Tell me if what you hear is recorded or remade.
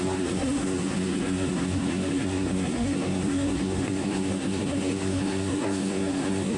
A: remade